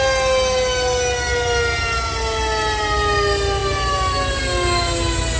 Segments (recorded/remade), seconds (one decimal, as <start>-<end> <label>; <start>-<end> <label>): 0.0-5.4 recorded